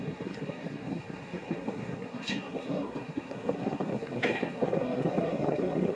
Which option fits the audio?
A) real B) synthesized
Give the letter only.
B